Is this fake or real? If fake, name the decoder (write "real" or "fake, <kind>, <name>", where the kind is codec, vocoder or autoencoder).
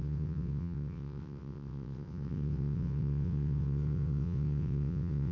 fake, vocoder, WaveNeXt